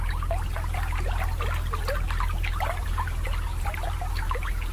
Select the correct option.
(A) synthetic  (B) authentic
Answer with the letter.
B